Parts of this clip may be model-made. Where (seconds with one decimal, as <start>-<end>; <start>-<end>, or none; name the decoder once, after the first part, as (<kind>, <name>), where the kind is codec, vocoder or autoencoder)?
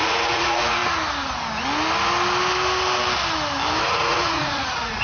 0.0-0.8 (vocoder, Vocos); 3.8-5.0